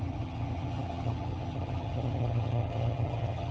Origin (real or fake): fake